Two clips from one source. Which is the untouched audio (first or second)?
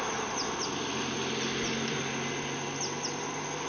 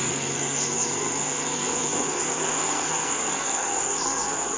first